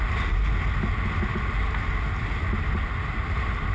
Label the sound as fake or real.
real